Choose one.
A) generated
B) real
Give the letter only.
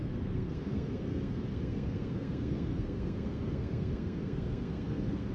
A